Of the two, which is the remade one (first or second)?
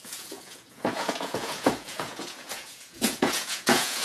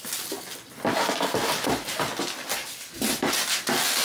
first